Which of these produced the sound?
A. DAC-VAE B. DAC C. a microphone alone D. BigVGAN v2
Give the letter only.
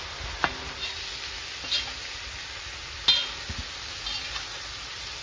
C